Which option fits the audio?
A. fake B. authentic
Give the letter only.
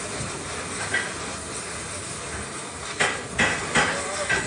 B